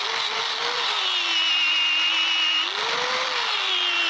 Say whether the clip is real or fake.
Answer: real